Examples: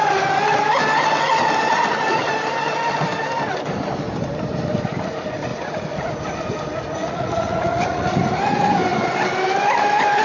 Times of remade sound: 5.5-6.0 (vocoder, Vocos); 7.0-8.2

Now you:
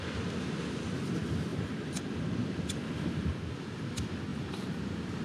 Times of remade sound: 4.3-5.2 (vocoder, BigVGAN v2)

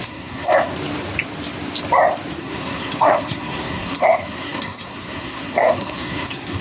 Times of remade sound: 0.0-0.7 (codec, SNAC); 2.4-6.6

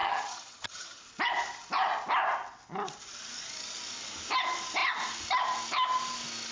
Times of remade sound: 0.0-1.0 (vocoder, HiFi-GAN)

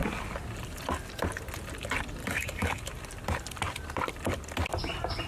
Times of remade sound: 2.2-2.8 (codec, DAC)

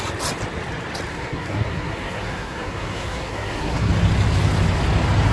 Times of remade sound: 1.1-3.9 (codec, SNAC)